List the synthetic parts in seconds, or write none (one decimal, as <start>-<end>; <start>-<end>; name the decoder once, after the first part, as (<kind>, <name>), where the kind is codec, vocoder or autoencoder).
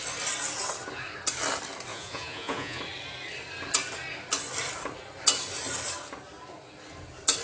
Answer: 1.9-2.8 (vocoder, Vocos)